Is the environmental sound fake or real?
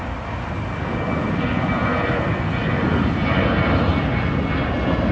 real